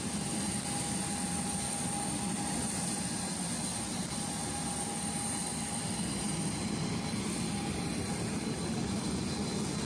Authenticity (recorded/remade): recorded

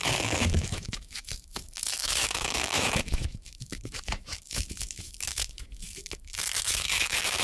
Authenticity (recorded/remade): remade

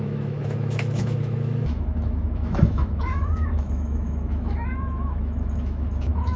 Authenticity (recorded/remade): remade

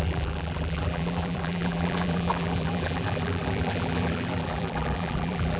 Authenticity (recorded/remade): remade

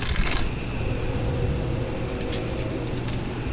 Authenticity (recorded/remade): recorded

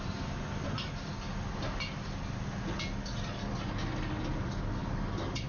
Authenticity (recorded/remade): recorded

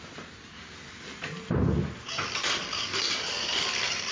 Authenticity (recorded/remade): recorded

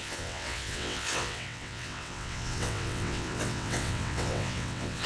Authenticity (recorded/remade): remade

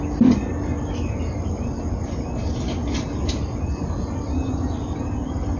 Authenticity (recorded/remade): recorded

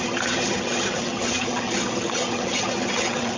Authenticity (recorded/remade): remade